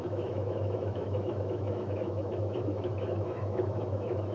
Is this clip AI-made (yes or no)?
yes